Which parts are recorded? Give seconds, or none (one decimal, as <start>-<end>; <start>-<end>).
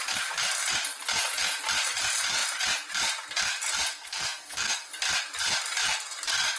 0.0-3.9; 4.9-6.6